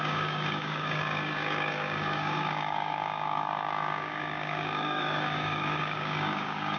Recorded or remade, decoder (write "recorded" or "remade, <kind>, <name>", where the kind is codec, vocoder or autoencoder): remade, codec, DAC